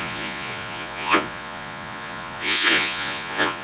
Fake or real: fake